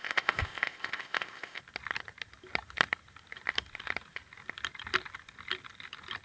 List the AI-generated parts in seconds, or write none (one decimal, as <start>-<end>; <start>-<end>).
0.0-1.6